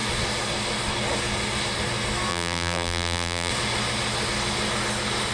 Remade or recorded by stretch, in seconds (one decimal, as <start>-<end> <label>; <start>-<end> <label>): 0.0-2.3 recorded; 2.3-3.5 remade; 3.5-5.3 recorded